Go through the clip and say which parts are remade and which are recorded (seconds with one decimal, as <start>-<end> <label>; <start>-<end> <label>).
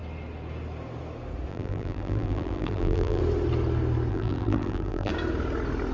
0.0-1.5 recorded; 1.5-3.2 remade; 3.2-4.1 recorded; 4.1-5.1 remade; 5.1-5.9 recorded